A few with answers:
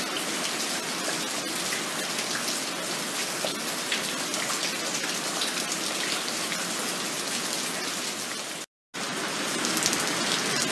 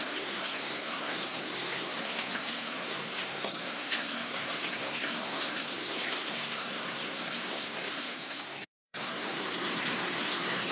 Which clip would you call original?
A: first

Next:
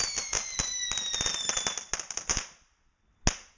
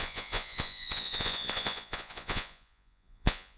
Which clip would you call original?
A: first